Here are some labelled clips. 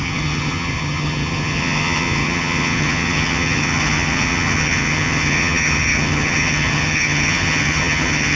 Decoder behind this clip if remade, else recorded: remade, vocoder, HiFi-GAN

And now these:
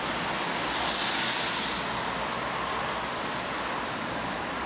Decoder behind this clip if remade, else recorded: recorded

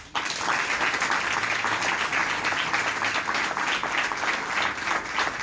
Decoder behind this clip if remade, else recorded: recorded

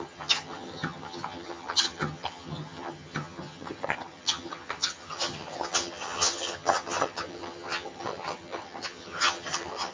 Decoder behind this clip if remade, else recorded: remade, vocoder, HiFi-GAN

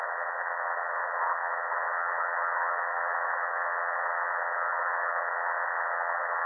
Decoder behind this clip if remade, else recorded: remade, vocoder, WaveNeXt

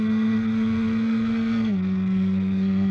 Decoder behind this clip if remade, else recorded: remade, codec, SNAC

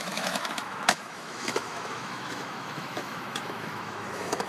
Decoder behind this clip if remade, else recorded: remade, autoencoder, DAC-VAE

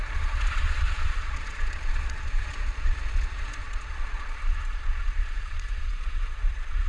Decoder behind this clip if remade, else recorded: remade, vocoder, Vocos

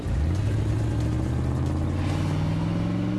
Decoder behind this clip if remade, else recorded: recorded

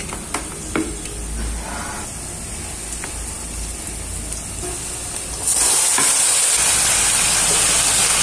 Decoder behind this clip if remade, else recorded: recorded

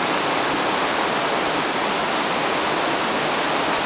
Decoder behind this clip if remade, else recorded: recorded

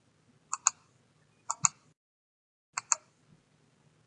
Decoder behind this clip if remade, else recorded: recorded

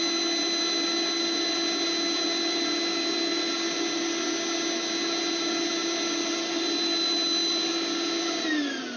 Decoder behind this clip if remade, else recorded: recorded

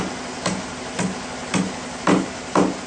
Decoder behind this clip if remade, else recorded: recorded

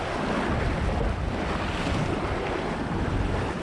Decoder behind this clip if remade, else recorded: recorded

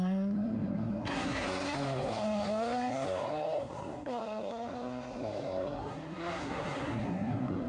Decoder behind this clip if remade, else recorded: remade, codec, SNAC